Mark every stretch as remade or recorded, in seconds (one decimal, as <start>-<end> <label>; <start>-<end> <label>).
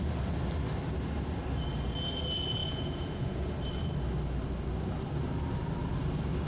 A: 0.0-2.6 recorded; 2.6-3.5 remade; 3.5-6.5 recorded